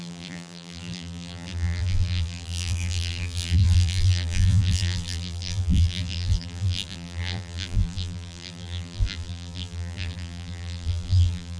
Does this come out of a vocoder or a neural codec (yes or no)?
yes